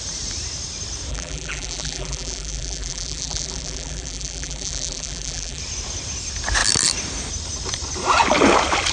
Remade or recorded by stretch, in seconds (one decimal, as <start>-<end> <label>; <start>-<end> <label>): 0.0-1.1 recorded; 1.1-5.6 remade; 5.6-8.9 recorded